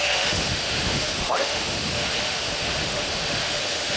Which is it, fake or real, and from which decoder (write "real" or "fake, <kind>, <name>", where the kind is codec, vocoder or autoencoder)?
fake, autoencoder, DAC-VAE